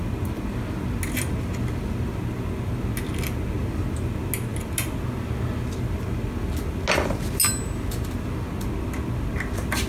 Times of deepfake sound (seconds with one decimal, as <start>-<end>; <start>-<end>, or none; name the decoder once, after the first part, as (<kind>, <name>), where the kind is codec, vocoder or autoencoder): none